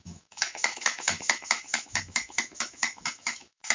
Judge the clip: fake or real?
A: fake